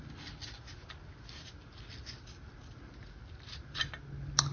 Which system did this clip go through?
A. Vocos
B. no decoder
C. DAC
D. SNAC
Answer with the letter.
B